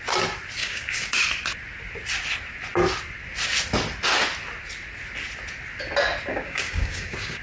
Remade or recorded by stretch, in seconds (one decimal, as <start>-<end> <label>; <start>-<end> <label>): 0.0-0.6 recorded; 0.6-1.2 remade; 1.2-6.3 recorded; 6.3-7.4 remade

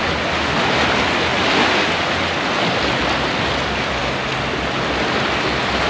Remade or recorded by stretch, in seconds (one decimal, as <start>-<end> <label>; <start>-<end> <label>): 0.0-5.9 recorded

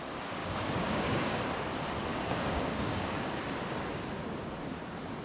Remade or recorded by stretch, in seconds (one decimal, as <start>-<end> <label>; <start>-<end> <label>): 0.0-0.4 recorded; 0.4-1.4 remade; 1.4-2.1 recorded; 2.1-3.3 remade; 3.3-5.2 recorded

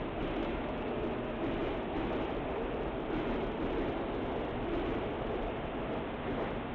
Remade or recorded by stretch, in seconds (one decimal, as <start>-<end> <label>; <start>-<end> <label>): 0.0-0.4 recorded; 0.4-1.0 remade; 1.0-6.7 recorded

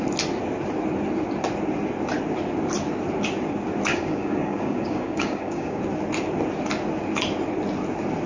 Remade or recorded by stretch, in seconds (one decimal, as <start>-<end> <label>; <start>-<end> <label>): 0.0-3.9 recorded; 3.9-5.8 remade; 5.8-8.3 recorded

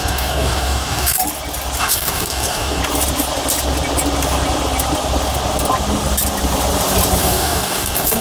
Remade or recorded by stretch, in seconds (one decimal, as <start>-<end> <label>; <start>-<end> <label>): 0.0-1.2 remade; 1.2-1.8 recorded; 1.8-2.8 remade; 2.8-7.2 recorded; 7.2-8.2 remade